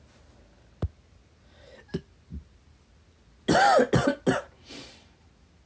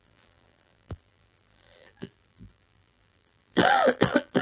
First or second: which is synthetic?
second